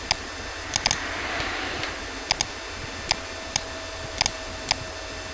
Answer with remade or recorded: recorded